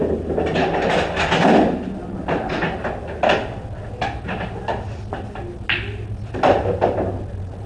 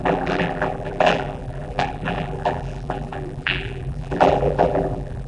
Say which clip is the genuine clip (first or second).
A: first